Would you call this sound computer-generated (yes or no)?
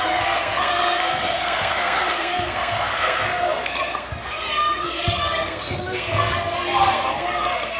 yes